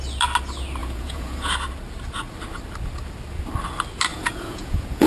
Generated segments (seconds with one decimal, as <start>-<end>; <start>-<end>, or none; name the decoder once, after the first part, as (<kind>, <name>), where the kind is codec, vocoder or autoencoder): 0.8-1.5 (vocoder, Vocos); 4.1-5.1